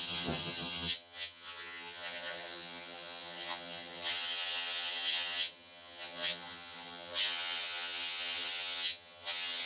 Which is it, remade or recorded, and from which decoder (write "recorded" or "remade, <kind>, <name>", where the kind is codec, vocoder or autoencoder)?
remade, vocoder, HiFi-GAN